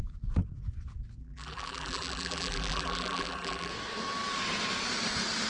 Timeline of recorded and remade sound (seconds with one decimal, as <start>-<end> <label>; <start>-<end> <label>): 0.0-1.2 recorded; 1.2-3.7 remade; 3.7-5.5 recorded